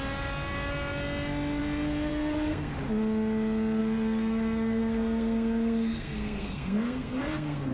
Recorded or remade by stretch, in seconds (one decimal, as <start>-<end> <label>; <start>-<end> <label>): 0.0-2.1 recorded; 2.1-2.7 remade; 2.7-3.8 recorded; 3.8-7.7 remade